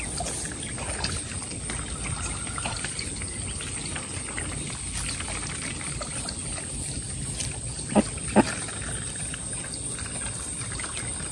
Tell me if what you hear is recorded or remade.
recorded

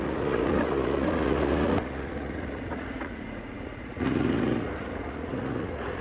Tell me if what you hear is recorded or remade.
remade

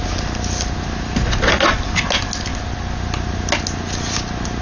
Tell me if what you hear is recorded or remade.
recorded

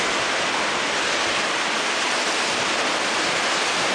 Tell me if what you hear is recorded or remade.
recorded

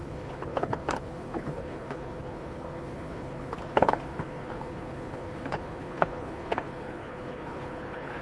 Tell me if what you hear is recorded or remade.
remade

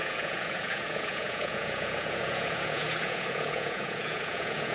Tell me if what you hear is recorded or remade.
remade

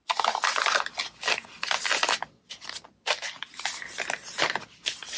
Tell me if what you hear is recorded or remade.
recorded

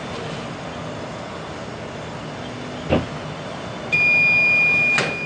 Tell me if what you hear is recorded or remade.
recorded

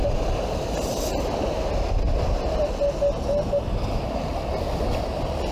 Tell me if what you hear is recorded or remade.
recorded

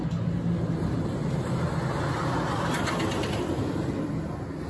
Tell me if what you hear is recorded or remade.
recorded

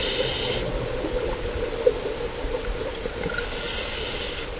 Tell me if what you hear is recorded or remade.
recorded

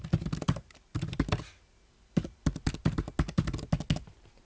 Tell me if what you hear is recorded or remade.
recorded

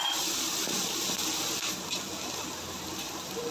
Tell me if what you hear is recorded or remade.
remade